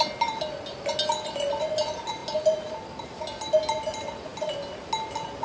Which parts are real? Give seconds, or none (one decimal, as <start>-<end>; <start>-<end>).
0.0-5.4